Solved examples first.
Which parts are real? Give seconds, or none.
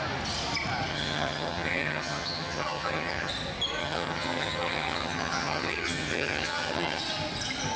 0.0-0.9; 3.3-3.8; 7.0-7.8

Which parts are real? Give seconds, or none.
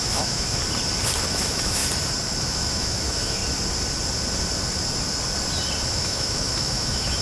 0.6-1.3; 1.8-2.4; 3.4-5.9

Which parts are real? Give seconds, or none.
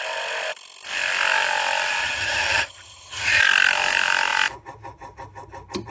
0.0-2.0; 3.4-5.9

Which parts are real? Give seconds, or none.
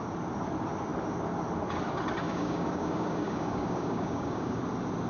0.0-2.2; 4.6-5.1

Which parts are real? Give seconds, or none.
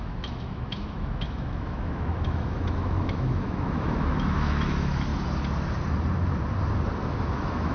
5.1-7.0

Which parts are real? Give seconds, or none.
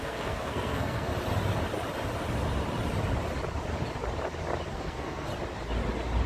1.1-4.7; 5.3-6.3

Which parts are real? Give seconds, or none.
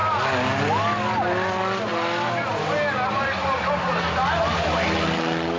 0.0-5.6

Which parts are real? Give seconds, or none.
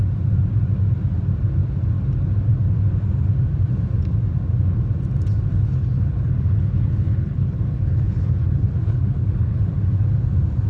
0.0-5.5; 9.8-10.7